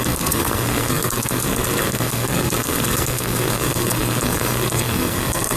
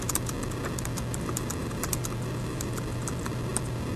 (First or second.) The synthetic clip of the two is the first